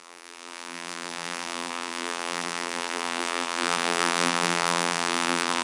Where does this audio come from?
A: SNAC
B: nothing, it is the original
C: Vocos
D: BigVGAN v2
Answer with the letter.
D